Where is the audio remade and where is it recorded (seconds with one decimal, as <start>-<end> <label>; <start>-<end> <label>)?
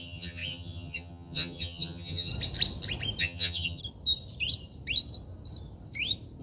0.0-2.3 remade; 2.3-3.2 recorded; 3.2-3.8 remade; 3.8-6.4 recorded